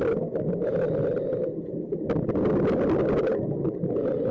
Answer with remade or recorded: recorded